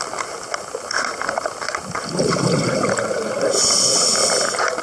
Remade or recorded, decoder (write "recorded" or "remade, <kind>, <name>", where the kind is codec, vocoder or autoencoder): recorded